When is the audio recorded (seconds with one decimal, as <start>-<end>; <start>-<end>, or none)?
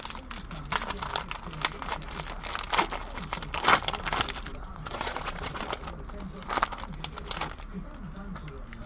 0.0-4.5; 5.6-8.9